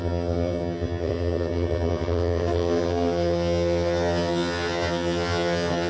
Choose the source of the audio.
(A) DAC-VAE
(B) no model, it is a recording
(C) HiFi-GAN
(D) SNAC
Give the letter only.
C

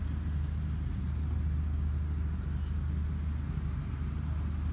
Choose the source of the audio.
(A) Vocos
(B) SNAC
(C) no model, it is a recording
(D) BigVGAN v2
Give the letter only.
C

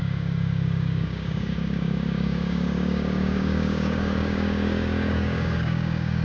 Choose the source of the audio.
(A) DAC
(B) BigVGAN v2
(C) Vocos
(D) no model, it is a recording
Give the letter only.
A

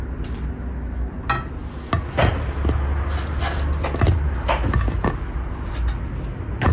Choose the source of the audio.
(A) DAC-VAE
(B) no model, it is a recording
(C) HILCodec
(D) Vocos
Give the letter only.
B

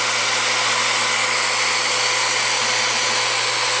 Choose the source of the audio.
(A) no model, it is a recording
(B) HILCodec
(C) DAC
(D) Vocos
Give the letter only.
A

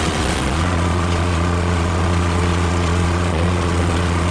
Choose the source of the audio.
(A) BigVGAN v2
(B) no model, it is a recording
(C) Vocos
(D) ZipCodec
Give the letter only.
C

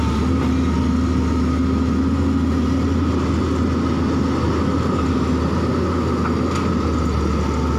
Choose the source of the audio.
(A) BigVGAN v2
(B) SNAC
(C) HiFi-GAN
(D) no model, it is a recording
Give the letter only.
D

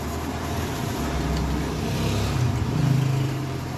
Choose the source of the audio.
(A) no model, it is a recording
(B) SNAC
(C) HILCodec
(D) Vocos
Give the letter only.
A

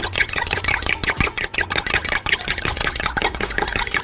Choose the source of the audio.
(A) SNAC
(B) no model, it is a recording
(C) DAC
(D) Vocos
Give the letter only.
D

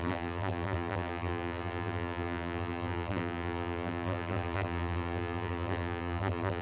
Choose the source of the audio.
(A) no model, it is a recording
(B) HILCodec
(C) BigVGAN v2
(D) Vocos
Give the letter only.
C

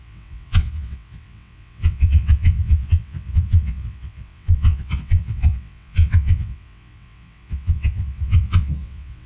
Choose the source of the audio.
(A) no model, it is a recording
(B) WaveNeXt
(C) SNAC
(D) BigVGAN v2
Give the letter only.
B